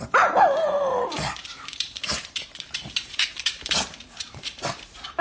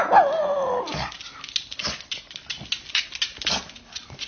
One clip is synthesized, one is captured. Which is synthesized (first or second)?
first